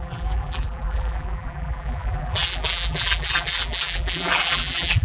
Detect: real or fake fake